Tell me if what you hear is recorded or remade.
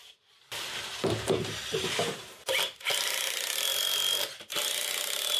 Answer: recorded